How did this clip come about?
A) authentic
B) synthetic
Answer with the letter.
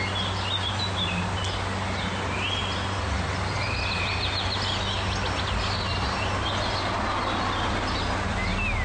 A